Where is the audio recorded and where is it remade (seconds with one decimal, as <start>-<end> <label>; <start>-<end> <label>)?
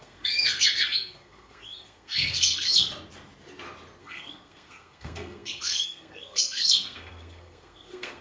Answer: 0.0-2.9 remade; 2.9-4.0 recorded; 4.0-8.2 remade